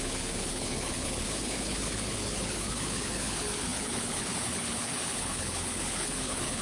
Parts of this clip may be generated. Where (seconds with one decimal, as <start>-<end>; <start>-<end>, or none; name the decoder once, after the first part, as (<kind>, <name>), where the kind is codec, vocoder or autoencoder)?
0.0-6.6 (codec, HILCodec)